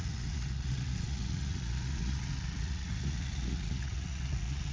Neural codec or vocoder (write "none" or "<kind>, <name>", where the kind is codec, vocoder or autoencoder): vocoder, Vocos